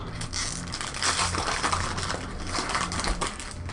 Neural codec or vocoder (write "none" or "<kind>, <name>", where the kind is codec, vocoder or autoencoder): none